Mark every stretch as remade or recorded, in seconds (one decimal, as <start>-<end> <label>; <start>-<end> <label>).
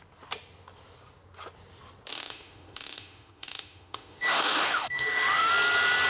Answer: 0.0-2.1 recorded; 2.1-5.5 remade; 5.5-6.1 recorded